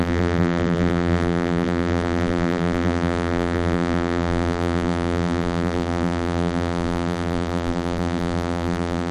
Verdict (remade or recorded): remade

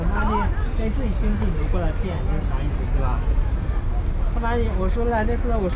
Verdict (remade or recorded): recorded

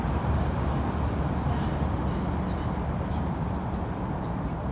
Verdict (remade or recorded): recorded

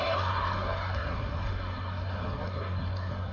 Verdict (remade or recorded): remade